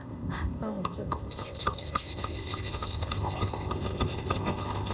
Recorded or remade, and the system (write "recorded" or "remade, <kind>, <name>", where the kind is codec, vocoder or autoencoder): remade, codec, ZipCodec